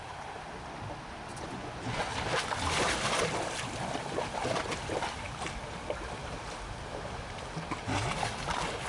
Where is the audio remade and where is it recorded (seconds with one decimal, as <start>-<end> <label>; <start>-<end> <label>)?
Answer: 0.0-1.3 recorded; 1.3-2.0 remade; 2.0-8.9 recorded